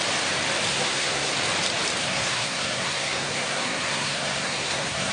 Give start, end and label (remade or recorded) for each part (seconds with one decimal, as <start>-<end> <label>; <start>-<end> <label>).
0.0-0.7 recorded; 0.7-1.3 remade; 1.3-2.0 recorded; 2.0-5.1 remade